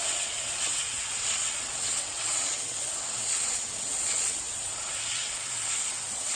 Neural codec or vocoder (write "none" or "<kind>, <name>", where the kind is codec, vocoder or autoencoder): vocoder, WaveNeXt